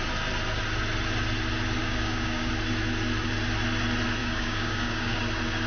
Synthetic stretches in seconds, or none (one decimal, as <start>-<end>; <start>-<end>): 1.8-2.5; 4.2-5.2